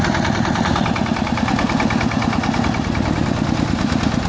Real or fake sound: real